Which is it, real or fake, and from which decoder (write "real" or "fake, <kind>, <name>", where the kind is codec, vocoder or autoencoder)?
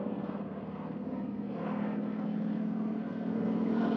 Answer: fake, codec, SNAC